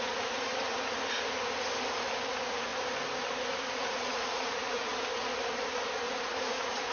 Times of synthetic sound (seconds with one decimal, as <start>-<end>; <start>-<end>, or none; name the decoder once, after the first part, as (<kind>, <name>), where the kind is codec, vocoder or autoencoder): 0.0-0.7 (vocoder, Vocos); 2.3-2.7; 3.6-4.9; 6.1-6.9